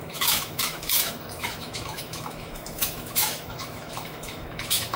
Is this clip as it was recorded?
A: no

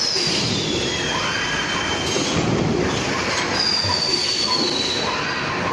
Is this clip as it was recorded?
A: yes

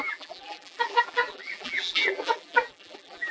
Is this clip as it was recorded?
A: no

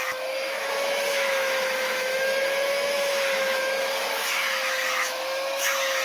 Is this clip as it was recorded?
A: no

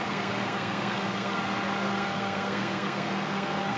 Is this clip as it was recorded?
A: no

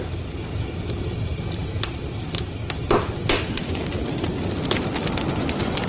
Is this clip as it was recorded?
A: yes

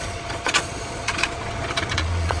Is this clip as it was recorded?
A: no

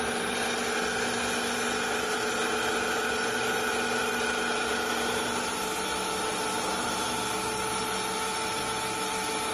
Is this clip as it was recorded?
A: yes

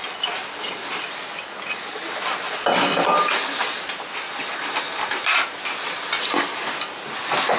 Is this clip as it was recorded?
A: yes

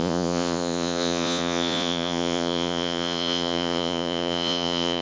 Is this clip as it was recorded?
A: no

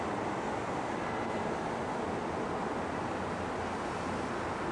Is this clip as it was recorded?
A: yes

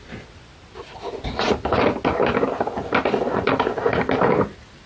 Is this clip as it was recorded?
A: yes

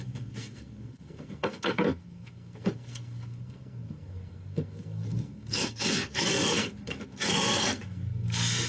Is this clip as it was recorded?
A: no